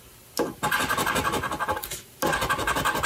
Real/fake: real